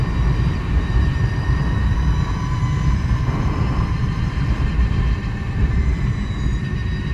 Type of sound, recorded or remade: remade